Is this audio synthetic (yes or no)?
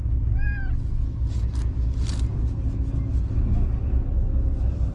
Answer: no